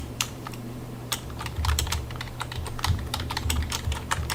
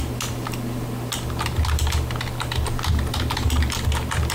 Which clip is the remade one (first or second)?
first